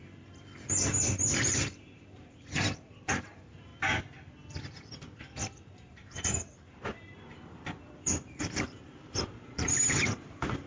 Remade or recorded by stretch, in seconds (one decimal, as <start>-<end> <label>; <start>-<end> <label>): 0.0-3.7 remade; 3.7-5.5 recorded; 5.5-10.7 remade